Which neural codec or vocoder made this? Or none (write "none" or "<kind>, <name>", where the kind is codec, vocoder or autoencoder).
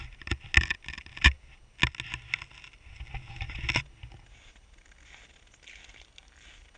none